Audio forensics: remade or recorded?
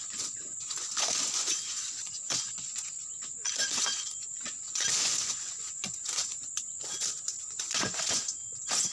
remade